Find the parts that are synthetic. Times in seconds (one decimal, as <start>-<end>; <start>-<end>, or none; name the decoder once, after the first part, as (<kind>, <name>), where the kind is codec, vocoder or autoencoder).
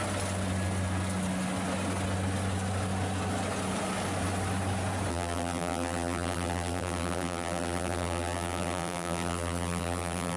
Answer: 5.1-10.4 (vocoder, BigVGAN v2)